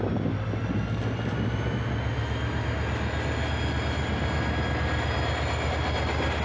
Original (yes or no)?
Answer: yes